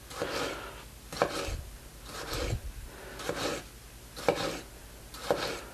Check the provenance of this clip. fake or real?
real